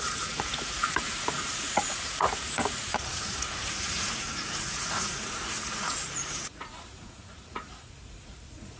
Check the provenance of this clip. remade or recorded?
remade